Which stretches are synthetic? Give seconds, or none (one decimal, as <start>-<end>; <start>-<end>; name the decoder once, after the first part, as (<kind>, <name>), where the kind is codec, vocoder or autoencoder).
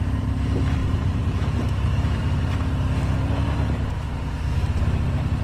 0.0-2.2 (vocoder, BigVGAN v2); 4.5-5.4